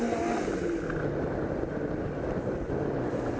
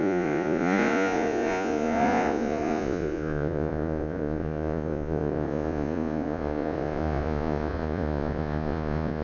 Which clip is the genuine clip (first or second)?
first